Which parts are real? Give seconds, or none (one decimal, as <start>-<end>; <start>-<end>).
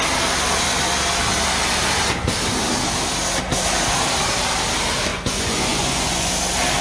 0.0-5.1; 6.3-6.8